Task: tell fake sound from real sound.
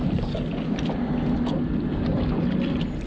real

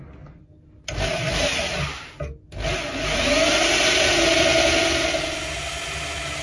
real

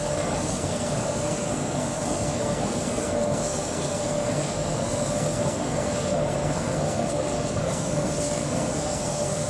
fake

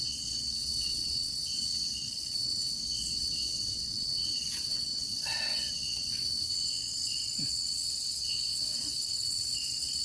fake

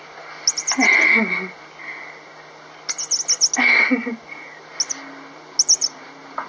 real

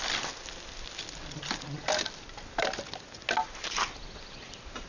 real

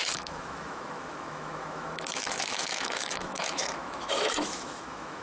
fake